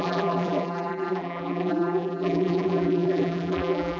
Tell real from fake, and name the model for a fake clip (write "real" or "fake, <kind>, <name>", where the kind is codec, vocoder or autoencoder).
fake, vocoder, BigVGAN v2